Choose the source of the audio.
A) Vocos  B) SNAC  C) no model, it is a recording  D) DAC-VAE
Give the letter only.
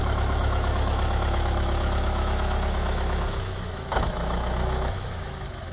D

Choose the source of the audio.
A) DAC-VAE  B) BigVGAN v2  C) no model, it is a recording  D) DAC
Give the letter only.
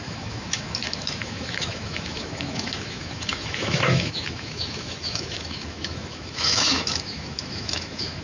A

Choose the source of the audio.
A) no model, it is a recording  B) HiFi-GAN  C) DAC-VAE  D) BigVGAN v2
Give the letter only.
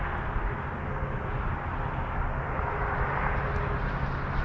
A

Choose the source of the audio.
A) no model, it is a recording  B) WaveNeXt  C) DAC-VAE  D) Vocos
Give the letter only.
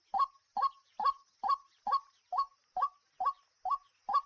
A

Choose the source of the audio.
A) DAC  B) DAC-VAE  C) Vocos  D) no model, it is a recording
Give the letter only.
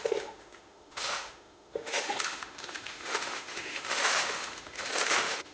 B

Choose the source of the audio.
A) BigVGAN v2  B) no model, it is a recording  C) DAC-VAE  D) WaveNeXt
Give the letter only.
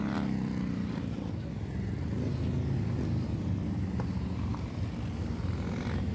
B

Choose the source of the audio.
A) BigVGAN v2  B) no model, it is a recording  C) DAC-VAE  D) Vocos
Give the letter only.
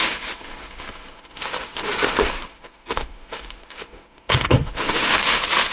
C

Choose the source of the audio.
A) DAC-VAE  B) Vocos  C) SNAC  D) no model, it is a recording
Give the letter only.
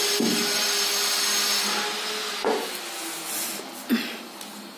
D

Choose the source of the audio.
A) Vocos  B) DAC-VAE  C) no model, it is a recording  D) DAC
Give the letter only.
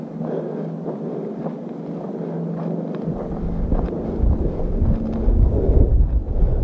C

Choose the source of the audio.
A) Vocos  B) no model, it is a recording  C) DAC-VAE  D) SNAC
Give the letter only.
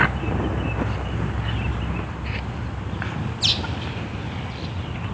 B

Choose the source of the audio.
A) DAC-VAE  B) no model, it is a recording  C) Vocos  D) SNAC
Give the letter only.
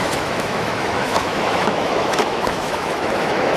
A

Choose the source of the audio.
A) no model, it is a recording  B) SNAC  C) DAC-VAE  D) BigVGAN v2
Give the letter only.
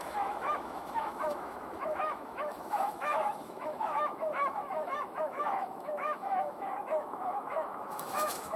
C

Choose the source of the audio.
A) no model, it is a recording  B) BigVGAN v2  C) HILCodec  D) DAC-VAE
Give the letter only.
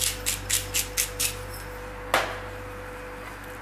A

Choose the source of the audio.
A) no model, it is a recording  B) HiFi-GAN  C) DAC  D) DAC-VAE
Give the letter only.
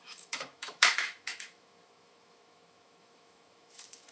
D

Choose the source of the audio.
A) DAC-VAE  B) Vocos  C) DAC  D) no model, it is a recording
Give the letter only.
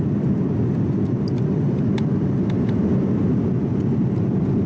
D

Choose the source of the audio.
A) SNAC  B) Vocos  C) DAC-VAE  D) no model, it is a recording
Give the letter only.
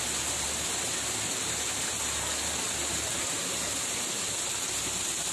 D